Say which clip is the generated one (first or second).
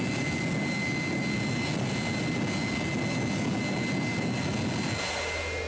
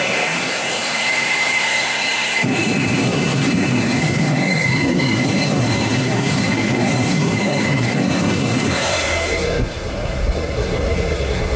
second